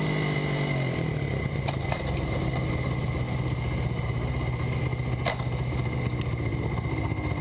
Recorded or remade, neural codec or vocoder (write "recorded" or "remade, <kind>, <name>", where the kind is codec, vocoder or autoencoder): recorded